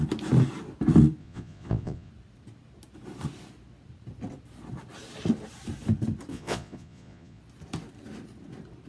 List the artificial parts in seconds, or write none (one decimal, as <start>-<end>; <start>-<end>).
1.2-2.1; 6.3-7.4